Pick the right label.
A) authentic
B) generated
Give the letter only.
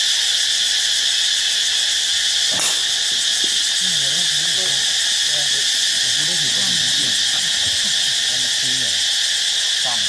A